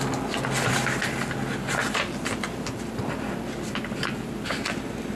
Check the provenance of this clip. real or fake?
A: real